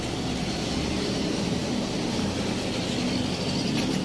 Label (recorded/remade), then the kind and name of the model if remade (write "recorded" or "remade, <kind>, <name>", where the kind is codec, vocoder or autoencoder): recorded